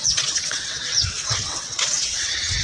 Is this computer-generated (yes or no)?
yes